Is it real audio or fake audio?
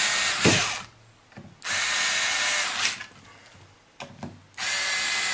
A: real